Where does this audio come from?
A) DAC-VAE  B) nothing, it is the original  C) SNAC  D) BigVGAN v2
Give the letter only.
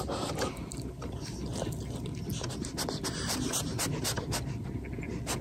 B